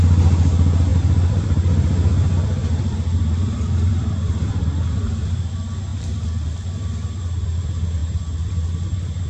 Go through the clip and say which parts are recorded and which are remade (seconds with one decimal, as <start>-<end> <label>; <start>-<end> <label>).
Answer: 0.0-0.9 recorded; 0.9-5.5 remade; 5.5-5.9 recorded; 5.9-7.6 remade; 7.6-8.0 recorded; 8.0-9.3 remade